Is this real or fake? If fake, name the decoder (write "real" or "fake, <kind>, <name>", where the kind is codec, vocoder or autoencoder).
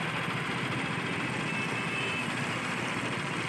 real